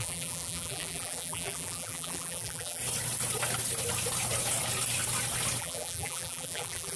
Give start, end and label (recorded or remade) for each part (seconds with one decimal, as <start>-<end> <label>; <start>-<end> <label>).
0.0-2.8 remade; 2.8-5.6 recorded; 5.6-7.0 remade